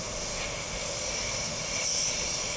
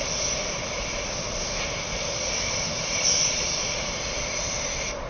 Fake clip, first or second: second